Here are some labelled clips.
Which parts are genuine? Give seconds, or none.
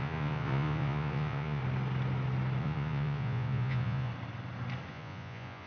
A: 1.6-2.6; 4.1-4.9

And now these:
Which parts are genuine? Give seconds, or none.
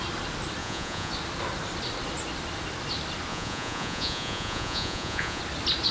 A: 0.0-0.6; 1.1-3.3; 5.4-5.9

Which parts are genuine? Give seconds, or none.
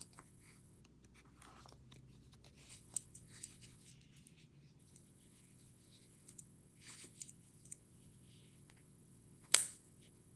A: 0.8-2.7; 3.9-4.8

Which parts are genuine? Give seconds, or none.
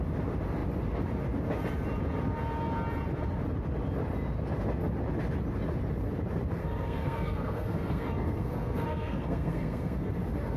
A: 0.0-6.6; 10.1-10.6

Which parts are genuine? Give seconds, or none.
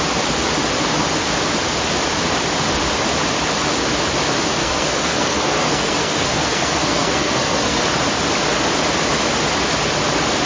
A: 0.0-4.6; 7.8-10.5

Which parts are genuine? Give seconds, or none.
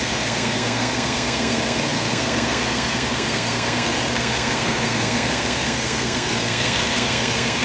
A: none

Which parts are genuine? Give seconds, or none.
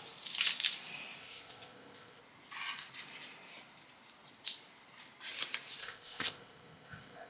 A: 0.0-1.2; 2.2-5.8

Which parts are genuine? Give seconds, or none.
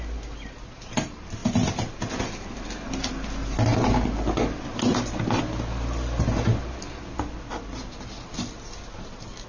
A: 0.0-9.5